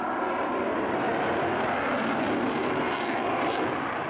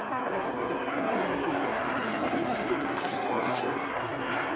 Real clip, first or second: first